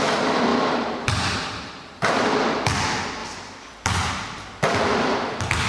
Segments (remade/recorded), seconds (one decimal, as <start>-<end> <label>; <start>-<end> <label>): 0.0-0.5 recorded; 0.5-2.8 remade; 2.8-3.2 recorded; 3.2-4.8 remade; 4.8-5.7 recorded